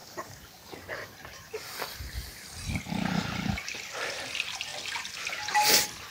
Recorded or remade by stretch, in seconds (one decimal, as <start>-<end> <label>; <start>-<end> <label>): 0.0-1.1 remade; 1.1-6.1 recorded